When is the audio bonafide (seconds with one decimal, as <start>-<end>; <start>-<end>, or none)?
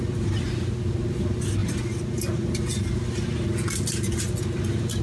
0.0-5.0